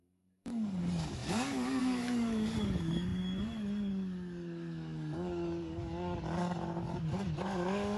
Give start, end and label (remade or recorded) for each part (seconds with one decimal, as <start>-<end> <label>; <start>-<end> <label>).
0.0-8.0 remade